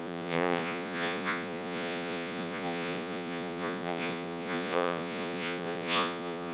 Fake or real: fake